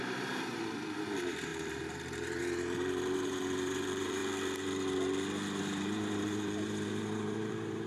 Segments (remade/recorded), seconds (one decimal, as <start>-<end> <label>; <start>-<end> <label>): 0.0-4.2 remade; 4.2-5.6 recorded; 5.6-7.9 remade